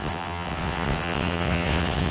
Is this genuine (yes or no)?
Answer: no